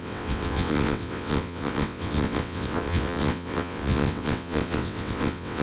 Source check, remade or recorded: remade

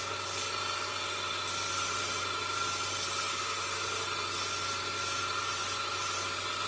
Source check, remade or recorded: recorded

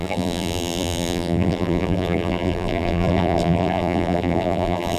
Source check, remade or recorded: remade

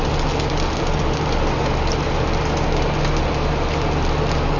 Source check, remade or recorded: recorded